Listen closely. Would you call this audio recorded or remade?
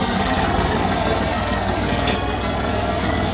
remade